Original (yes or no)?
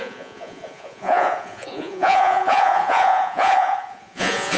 no